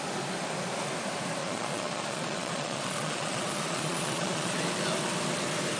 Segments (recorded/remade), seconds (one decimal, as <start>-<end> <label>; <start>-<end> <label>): 0.0-1.4 recorded; 1.4-4.6 remade; 4.6-5.8 recorded